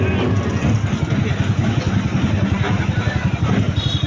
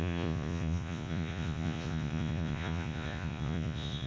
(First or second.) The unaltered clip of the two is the first